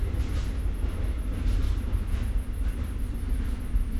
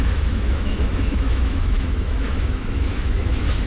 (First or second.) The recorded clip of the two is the first